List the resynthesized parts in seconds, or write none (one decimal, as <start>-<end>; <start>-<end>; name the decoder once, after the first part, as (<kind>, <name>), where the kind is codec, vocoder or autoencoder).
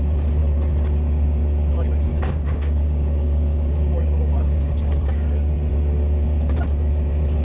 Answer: 2.1-5.7 (codec, DAC)